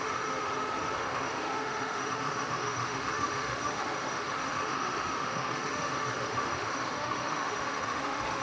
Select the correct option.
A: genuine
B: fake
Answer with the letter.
B